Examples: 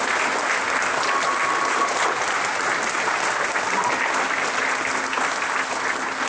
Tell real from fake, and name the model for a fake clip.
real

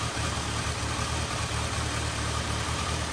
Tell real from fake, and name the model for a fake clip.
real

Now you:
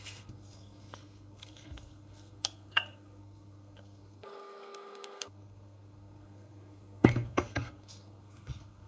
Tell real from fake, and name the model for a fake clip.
fake, codec, SNAC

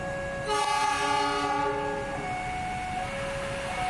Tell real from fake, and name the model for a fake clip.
real